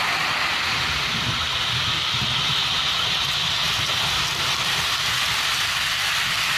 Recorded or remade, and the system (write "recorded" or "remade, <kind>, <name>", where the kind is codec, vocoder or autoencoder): recorded